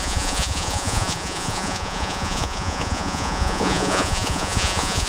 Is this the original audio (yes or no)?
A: no